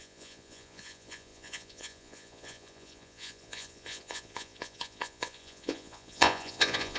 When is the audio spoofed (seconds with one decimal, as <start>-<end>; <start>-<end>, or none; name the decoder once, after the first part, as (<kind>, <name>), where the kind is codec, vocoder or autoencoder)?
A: 0.0-7.0 (vocoder, Vocos)